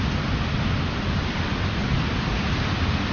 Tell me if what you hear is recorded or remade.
recorded